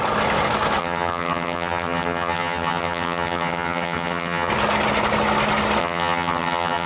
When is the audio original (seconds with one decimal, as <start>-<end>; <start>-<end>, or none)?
0.0-0.8; 4.5-5.8